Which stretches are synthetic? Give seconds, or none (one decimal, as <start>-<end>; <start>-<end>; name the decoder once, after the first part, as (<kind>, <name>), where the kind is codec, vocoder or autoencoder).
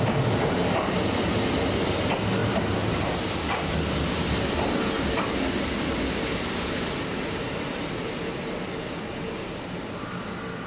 none